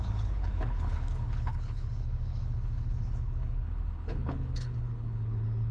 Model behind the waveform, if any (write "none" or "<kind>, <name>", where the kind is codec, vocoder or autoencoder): codec, HILCodec